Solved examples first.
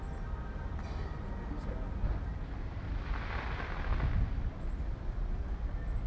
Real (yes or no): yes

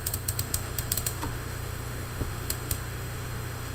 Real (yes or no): no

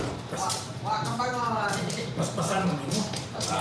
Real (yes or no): no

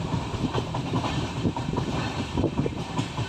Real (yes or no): no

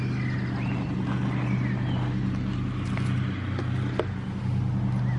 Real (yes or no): yes